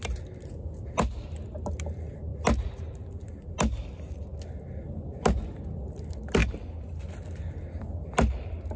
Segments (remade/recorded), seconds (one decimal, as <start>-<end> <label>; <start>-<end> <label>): 0.0-8.8 recorded